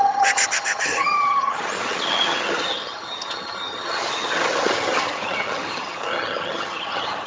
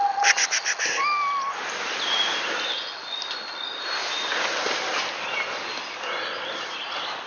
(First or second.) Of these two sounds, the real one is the second